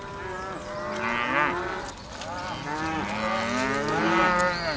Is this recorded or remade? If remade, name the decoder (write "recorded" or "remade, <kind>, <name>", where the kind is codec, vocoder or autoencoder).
recorded